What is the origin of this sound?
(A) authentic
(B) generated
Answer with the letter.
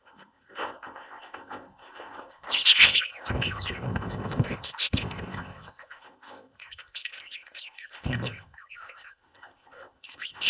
B